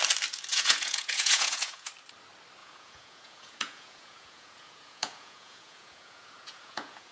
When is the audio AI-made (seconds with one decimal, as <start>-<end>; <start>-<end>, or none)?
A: 0.5-1.9; 2.6-7.1